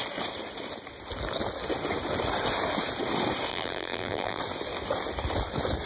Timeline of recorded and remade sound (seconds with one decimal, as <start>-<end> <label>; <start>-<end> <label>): 0.0-3.5 recorded; 3.5-4.4 remade; 4.4-5.9 recorded